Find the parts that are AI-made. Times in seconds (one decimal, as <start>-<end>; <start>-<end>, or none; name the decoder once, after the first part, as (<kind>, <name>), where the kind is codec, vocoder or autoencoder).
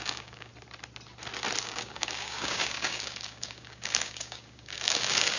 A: 0.0-0.5 (codec, DAC); 1.6-5.4